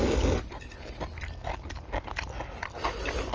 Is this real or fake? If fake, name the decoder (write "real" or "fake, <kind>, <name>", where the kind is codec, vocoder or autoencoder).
real